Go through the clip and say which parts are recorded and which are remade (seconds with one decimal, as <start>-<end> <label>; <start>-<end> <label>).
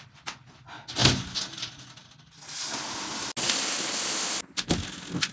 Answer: 0.0-5.3 recorded